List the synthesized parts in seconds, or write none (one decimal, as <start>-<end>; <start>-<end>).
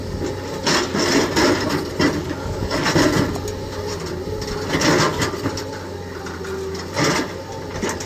2.2-2.9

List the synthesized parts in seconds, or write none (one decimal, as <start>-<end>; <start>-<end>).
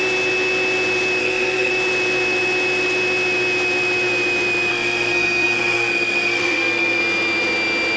1.2-1.7; 4.7-7.0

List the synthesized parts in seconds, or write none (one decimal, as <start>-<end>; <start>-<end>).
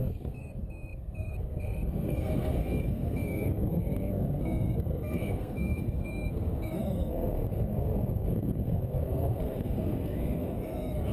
0.0-11.1